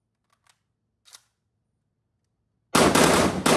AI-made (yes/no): no